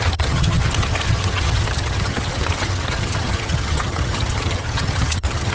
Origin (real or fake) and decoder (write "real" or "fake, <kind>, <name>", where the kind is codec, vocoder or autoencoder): fake, vocoder, HiFi-GAN